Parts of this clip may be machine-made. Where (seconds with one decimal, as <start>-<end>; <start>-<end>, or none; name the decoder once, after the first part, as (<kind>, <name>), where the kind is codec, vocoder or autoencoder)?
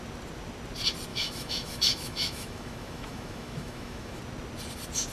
1.1-4.2 (autoencoder, DAC-VAE)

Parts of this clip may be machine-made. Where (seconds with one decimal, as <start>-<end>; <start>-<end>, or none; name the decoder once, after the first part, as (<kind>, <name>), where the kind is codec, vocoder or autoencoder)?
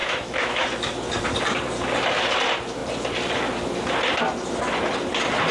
0.0-0.9 (autoencoder, DAC-VAE)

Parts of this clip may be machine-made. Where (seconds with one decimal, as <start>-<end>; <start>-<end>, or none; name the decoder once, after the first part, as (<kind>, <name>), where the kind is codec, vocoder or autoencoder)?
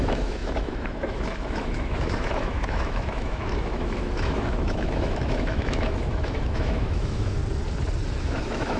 0.0-7.4 (autoencoder, DAC-VAE); 8.2-8.8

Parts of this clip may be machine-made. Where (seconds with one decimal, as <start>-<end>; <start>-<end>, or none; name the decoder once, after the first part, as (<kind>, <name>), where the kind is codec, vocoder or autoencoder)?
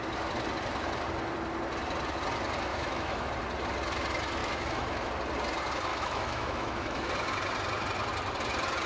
2.7-3.3 (autoencoder, DAC-VAE); 4.4-5.1; 5.9-7.1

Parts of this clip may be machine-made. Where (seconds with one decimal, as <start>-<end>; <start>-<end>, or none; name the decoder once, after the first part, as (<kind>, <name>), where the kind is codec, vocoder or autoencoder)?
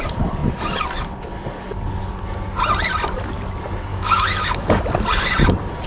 3.9-4.8 (autoencoder, DAC-VAE)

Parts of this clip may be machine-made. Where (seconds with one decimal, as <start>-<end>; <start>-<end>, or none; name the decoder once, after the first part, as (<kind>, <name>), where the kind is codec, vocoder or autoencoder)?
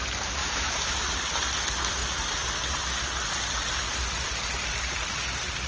0.4-1.0 (autoencoder, DAC-VAE)